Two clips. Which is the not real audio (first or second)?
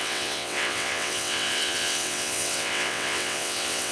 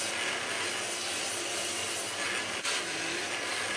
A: first